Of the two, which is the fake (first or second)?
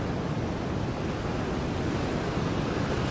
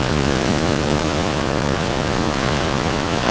second